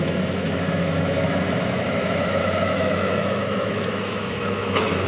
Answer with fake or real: fake